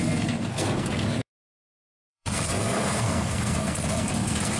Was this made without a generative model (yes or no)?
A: no